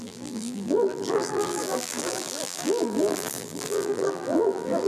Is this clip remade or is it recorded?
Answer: remade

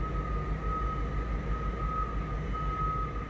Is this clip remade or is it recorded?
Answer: recorded